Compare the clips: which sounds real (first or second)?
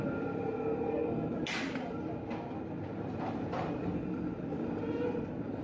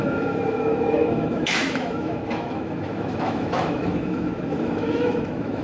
first